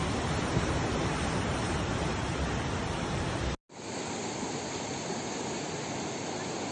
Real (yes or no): yes